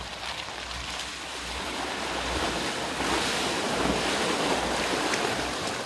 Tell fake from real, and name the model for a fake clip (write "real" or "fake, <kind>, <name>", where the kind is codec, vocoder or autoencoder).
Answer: real